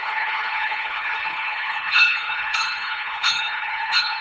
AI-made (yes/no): yes